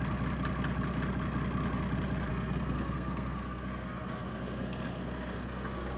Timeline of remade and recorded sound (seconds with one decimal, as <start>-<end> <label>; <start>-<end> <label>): 0.0-2.3 recorded; 2.3-6.0 remade